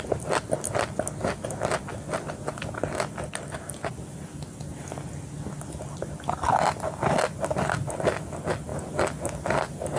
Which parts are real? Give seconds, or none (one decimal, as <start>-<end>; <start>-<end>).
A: 0.0-10.0